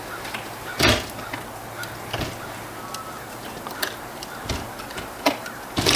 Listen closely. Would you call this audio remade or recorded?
recorded